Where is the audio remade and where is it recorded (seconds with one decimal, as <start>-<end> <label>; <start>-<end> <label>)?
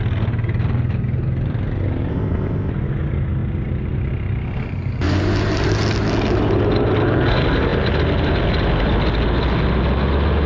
0.0-2.1 recorded; 2.1-2.7 remade; 2.7-10.5 recorded